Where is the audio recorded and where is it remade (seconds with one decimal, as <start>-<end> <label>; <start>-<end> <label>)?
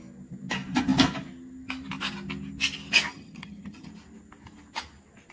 0.0-3.1 recorded; 3.1-3.9 remade; 3.9-5.3 recorded